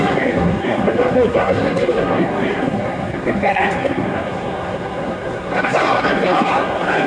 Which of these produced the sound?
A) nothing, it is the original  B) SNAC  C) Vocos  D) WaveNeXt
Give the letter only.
B